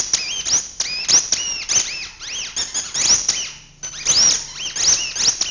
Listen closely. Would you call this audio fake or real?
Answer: real